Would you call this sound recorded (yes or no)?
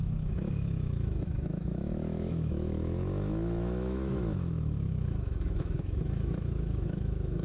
no